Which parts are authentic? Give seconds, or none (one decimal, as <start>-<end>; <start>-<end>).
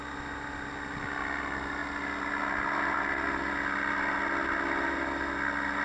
0.0-5.8